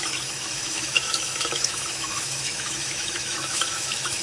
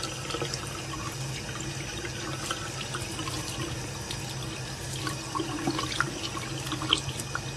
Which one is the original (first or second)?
second